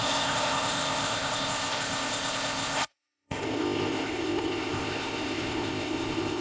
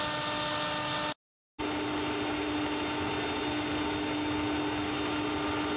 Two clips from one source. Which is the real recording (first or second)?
second